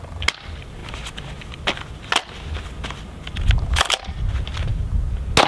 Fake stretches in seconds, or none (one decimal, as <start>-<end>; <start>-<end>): none